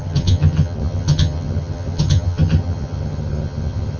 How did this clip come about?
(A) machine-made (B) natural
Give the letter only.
A